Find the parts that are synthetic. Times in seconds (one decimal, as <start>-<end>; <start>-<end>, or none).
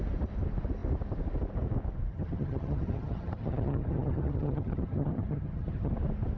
2.1-5.9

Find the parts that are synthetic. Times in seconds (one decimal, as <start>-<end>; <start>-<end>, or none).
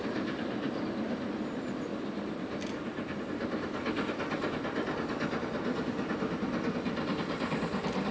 none